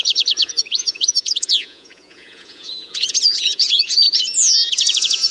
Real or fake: fake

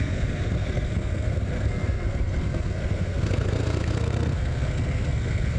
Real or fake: fake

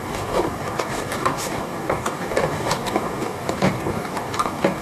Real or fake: fake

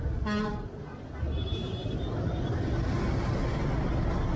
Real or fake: real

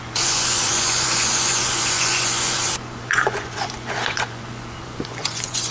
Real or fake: fake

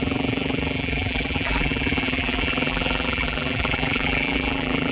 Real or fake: fake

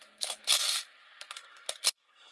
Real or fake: fake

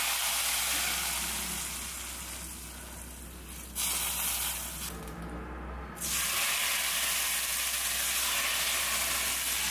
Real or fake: real